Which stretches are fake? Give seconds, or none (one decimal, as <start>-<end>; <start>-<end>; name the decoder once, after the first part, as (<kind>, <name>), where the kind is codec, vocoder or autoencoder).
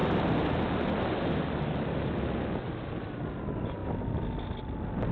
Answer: none